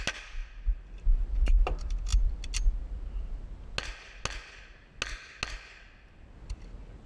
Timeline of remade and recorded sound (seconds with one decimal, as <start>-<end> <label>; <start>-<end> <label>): 0.0-7.1 recorded